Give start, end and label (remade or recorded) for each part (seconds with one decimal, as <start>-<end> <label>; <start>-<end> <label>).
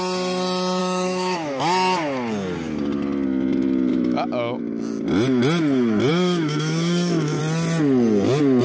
0.0-0.8 recorded; 0.8-1.6 remade; 1.6-3.9 recorded; 3.9-4.6 remade; 4.6-6.1 recorded; 6.1-7.4 remade; 7.4-8.6 recorded